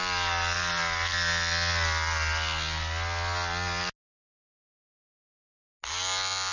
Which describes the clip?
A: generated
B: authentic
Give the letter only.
B